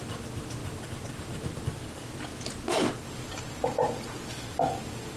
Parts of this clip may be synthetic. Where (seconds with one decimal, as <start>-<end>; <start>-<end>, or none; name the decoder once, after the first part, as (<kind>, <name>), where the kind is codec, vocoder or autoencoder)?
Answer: 0.6-1.6 (vocoder, BigVGAN v2)

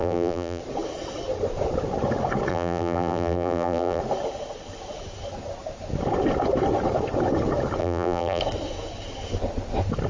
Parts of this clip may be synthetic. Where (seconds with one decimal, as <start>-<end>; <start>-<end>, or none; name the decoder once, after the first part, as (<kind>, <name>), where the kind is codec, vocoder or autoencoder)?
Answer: 0.0-0.6 (vocoder, BigVGAN v2); 2.5-4.0; 7.8-8.4

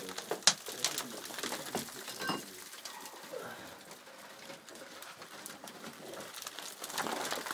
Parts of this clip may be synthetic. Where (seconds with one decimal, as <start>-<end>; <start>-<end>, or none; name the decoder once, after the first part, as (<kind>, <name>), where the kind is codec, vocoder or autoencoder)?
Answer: 4.7-6.0 (vocoder, BigVGAN v2)

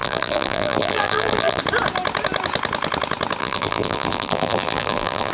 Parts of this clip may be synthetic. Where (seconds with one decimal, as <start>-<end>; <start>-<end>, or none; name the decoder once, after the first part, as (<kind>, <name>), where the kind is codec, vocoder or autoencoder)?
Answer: 0.0-1.6 (vocoder, BigVGAN v2); 3.4-5.3

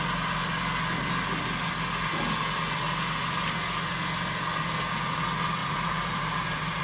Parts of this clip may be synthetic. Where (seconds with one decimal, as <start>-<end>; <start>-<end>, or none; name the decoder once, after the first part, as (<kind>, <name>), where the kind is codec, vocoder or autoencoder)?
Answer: 5.6-6.8 (vocoder, BigVGAN v2)

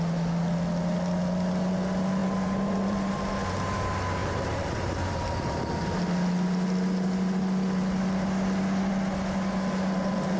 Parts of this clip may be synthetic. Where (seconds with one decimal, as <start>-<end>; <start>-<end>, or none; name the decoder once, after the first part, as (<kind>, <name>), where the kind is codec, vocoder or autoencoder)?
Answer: 2.2-3.1 (vocoder, BigVGAN v2); 4.2-5.7

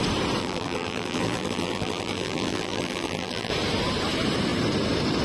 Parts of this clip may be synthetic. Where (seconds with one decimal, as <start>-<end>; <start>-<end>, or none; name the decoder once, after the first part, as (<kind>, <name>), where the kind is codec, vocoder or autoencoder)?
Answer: 0.4-3.5 (vocoder, BigVGAN v2)